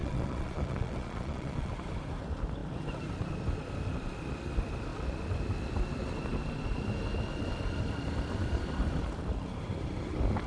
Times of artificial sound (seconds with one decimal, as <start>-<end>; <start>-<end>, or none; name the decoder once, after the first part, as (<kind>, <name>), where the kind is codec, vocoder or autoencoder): 0.0-1.7 (vocoder, Vocos)